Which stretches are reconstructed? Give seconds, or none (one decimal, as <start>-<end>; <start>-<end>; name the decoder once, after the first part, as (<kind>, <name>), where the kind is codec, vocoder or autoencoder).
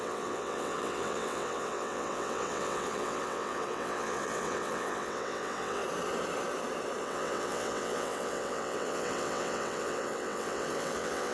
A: 0.0-5.8 (vocoder, WaveNeXt); 7.0-11.3